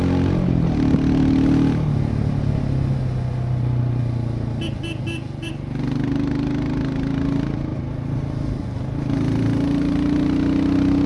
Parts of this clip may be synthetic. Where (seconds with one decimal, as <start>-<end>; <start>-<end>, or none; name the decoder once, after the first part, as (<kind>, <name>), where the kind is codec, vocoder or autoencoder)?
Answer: none